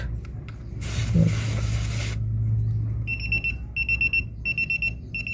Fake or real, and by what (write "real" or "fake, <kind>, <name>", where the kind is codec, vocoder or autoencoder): real